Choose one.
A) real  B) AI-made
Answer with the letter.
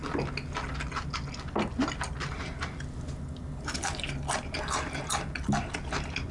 A